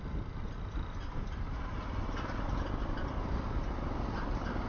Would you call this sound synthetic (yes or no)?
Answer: no